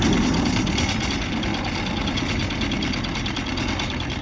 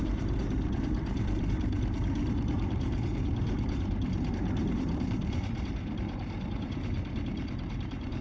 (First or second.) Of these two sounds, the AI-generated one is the second